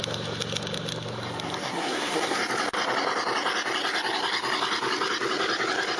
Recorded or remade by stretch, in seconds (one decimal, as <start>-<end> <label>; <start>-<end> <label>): 0.0-1.6 recorded; 1.6-2.4 remade; 2.4-6.0 recorded